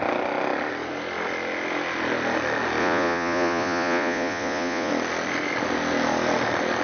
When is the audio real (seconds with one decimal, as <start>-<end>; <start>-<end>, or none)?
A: 0.0-2.8; 4.9-6.8